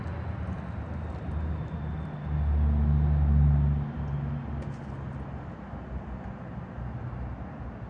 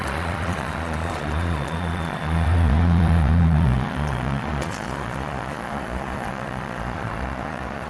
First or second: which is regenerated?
second